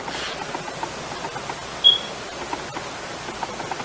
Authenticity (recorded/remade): recorded